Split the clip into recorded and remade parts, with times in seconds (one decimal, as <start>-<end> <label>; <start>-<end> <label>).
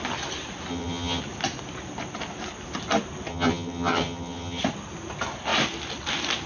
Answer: 0.0-0.7 recorded; 0.7-1.2 remade; 1.2-3.3 recorded; 3.3-4.6 remade; 4.6-6.5 recorded